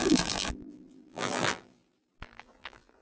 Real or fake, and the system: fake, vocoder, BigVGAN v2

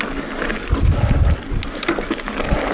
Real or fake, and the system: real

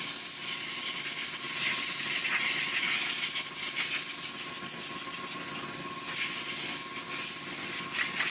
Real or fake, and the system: real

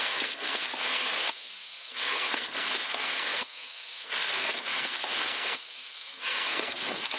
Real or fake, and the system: fake, codec, SNAC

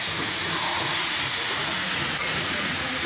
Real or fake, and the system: fake, vocoder, Vocos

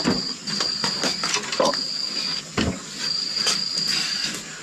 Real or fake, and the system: real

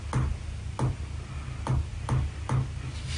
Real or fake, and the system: real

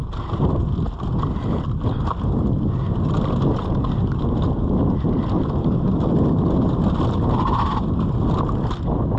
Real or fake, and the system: real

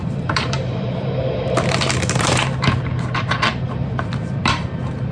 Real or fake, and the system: fake, vocoder, BigVGAN v2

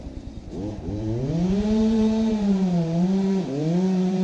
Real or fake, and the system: fake, vocoder, BigVGAN v2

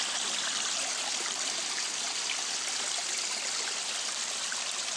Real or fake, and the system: real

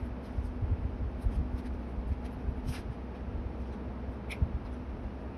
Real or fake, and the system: real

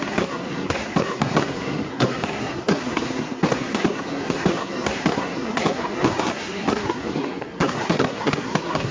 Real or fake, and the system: fake, codec, SNAC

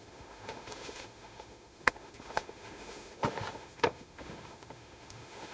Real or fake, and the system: fake, autoencoder, DAC-VAE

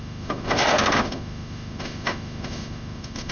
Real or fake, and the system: fake, autoencoder, DAC-VAE